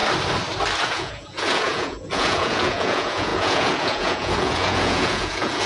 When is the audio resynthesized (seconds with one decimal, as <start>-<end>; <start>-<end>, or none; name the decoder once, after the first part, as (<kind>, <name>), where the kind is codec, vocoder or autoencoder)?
0.8-5.7 (vocoder, Vocos)